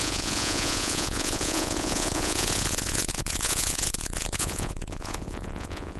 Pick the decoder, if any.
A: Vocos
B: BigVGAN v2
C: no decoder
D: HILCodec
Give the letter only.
A